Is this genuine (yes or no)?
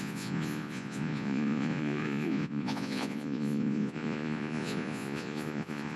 no